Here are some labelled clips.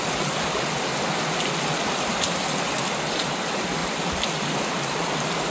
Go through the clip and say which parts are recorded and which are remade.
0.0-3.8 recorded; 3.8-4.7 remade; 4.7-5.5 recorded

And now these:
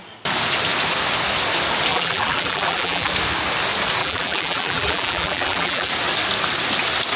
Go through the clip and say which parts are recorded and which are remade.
0.0-1.9 recorded; 1.9-3.1 remade; 3.1-4.0 recorded; 4.0-5.9 remade; 5.9-7.2 recorded